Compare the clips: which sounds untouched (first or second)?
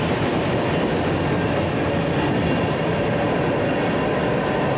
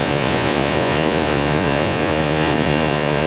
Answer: first